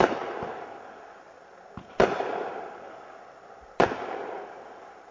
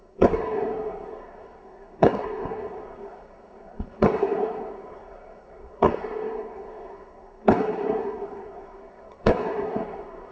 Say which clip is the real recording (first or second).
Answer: first